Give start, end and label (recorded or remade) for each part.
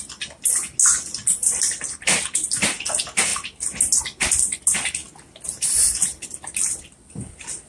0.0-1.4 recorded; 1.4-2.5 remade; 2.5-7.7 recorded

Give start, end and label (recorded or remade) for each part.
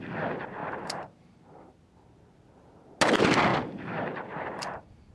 0.0-0.6 recorded; 0.6-1.7 remade; 1.7-3.5 recorded; 3.5-5.1 remade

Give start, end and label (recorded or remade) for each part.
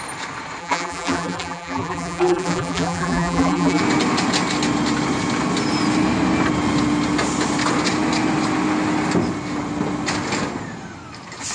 0.0-0.6 recorded; 0.6-3.8 remade; 3.8-11.5 recorded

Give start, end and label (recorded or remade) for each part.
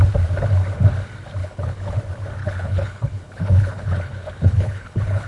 0.0-1.4 recorded; 1.4-2.0 remade; 2.0-2.4 recorded; 2.4-5.3 remade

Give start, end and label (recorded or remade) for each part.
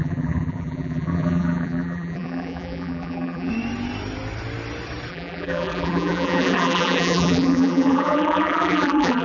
0.0-3.5 remade; 3.5-5.1 recorded; 5.1-9.2 remade